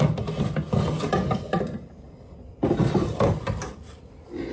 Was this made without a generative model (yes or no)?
no